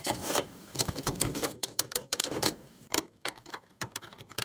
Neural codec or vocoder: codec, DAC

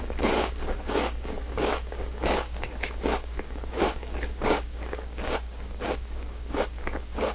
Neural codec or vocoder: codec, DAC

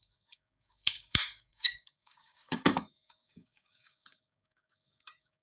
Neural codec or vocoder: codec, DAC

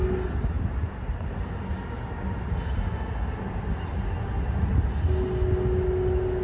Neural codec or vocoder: none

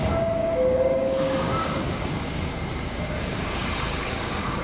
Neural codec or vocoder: codec, DAC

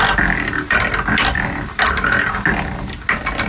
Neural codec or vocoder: none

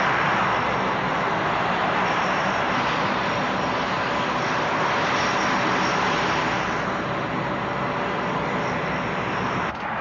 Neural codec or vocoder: none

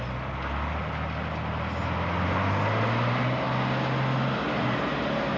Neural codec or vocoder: none